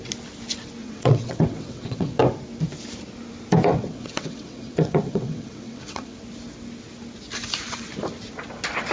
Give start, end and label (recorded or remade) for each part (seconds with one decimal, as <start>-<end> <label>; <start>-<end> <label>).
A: 0.0-0.8 recorded; 0.8-2.2 remade; 2.2-3.7 recorded; 3.7-6.2 remade; 6.2-8.9 recorded